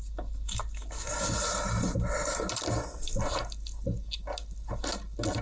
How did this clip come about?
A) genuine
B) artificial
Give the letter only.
A